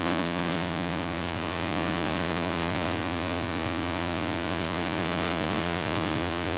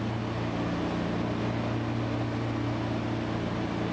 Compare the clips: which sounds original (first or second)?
second